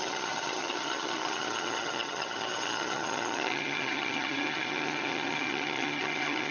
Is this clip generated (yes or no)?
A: yes